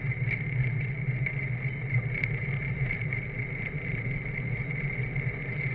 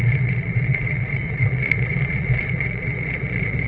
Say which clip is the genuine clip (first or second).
first